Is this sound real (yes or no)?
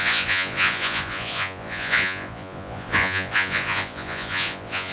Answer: no